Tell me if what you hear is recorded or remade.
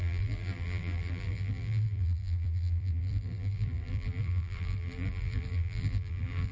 remade